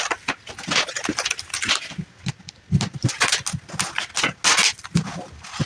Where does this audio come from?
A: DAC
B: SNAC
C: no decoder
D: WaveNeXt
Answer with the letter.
C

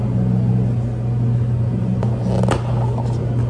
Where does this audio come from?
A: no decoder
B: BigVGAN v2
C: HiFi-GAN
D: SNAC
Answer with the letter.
A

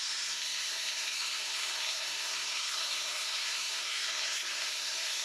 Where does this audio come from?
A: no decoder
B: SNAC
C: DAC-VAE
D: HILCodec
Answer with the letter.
B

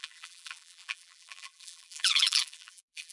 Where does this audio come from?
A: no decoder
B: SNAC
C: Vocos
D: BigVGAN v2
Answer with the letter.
D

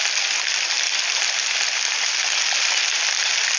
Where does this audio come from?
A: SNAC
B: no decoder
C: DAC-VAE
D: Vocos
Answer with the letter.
B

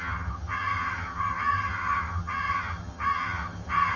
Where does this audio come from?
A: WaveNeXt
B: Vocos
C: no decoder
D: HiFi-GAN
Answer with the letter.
D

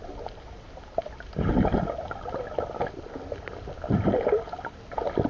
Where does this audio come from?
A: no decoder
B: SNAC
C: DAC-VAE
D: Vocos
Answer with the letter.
A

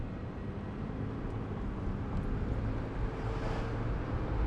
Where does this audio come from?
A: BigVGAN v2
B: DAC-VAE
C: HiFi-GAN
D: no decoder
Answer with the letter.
D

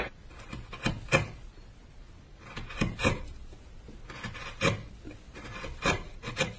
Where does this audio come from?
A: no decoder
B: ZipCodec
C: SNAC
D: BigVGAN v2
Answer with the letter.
A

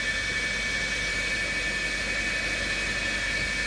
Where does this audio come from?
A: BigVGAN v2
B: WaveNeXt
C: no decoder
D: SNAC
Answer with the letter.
C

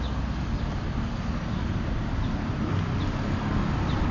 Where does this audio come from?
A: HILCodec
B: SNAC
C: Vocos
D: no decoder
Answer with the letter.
D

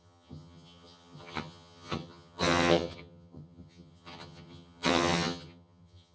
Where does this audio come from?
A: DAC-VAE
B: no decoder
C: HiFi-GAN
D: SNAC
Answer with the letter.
C